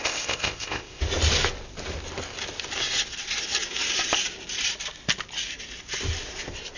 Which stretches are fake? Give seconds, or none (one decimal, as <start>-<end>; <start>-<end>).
0.0-1.0